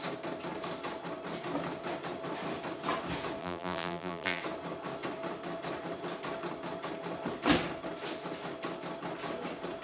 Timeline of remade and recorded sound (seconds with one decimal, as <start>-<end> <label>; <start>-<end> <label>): 0.0-3.4 recorded; 3.4-4.4 remade; 4.4-9.8 recorded